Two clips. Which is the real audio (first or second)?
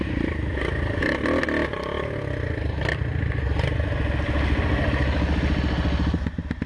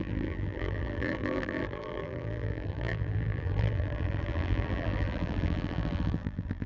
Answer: first